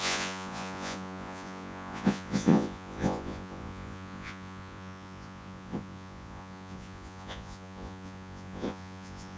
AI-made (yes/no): yes